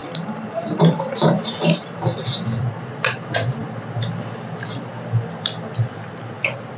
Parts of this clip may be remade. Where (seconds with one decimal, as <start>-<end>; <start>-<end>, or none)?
0.0-2.6